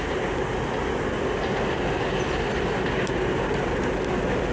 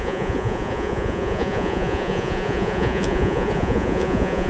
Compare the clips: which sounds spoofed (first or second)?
second